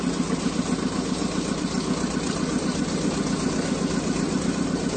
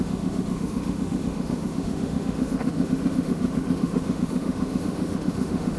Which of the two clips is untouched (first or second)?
first